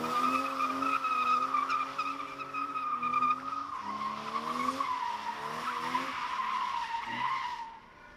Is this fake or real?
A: real